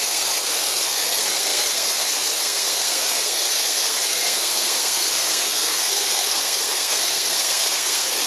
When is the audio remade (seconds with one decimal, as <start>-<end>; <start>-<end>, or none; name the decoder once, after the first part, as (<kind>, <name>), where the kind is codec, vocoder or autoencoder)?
0.0-8.3 (codec, SNAC)